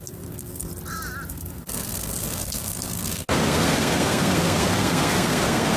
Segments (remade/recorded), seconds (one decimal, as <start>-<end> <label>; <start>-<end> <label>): 0.0-0.7 remade; 0.7-1.3 recorded; 1.3-5.8 remade